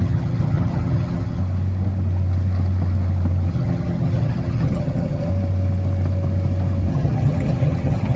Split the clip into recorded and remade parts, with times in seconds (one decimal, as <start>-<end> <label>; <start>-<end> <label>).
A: 0.0-1.4 remade; 1.4-3.5 recorded; 3.5-5.3 remade; 5.3-6.9 recorded; 6.9-8.2 remade